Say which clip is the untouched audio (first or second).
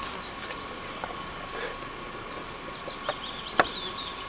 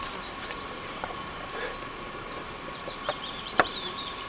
first